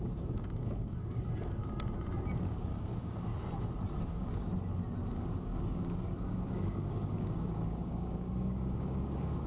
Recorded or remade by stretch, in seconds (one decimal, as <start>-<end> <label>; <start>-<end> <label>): 0.0-1.6 remade; 1.6-2.5 recorded; 2.5-3.3 remade; 3.3-4.0 recorded; 4.0-4.5 remade; 4.5-5.1 recorded; 5.1-9.5 remade

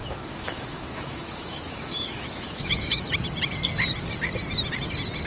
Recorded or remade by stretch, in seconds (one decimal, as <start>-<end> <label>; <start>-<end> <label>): 0.0-3.1 remade; 3.1-5.3 recorded

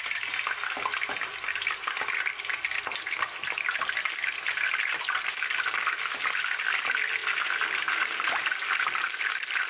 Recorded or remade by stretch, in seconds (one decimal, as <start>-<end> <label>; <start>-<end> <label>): 0.0-9.7 recorded

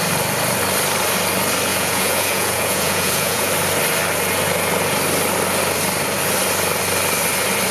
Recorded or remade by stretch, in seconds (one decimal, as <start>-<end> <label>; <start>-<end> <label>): 0.0-1.7 recorded; 1.7-3.5 remade; 3.5-7.7 recorded

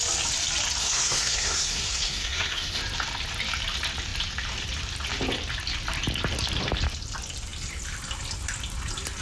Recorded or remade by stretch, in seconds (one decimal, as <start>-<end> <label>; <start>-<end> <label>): 0.0-0.8 recorded; 0.8-2.8 remade; 2.8-9.2 recorded

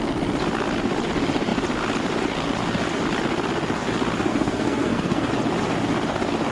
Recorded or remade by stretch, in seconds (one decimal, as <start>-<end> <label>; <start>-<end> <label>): 0.0-4.3 recorded; 4.3-5.3 remade; 5.3-6.5 recorded